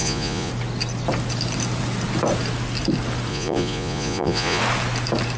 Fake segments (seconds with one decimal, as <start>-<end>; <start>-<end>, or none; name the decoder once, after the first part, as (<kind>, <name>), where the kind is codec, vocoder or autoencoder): 0.0-0.5 (vocoder, Vocos); 3.3-4.6